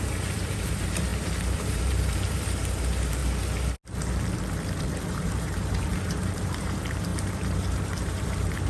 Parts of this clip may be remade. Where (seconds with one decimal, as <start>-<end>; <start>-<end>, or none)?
0.0-3.2; 4.8-8.7